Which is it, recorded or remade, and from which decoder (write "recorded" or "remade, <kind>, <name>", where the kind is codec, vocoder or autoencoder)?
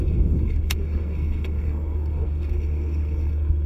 remade, codec, SNAC